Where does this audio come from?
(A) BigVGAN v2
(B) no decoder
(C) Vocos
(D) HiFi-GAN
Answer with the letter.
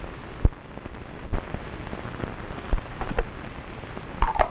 B